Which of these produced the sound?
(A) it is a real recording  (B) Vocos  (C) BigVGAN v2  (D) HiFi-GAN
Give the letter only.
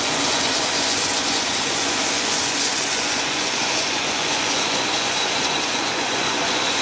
B